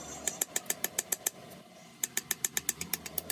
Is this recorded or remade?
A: recorded